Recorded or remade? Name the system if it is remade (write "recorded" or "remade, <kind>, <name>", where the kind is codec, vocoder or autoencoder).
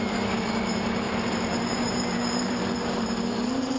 remade, vocoder, BigVGAN v2